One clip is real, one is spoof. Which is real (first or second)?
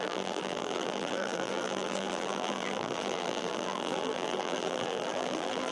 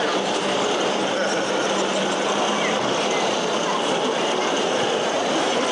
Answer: second